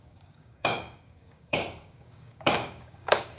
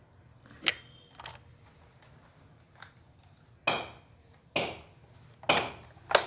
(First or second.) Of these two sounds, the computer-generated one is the first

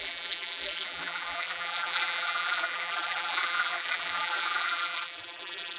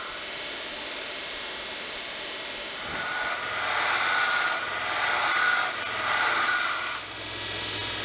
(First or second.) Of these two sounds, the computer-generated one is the first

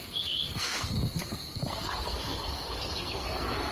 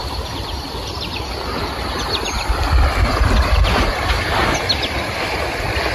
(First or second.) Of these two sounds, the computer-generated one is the first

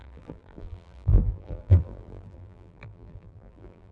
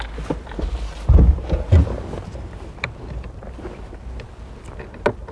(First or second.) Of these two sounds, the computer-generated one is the first